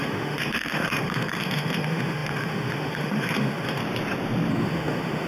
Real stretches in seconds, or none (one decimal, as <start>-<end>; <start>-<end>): 3.8-4.5